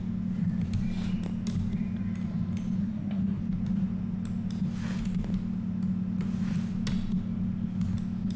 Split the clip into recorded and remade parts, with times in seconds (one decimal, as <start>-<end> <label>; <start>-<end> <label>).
0.0-2.8 recorded; 2.8-3.4 remade; 3.4-8.4 recorded